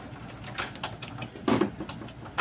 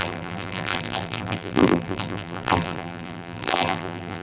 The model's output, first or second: second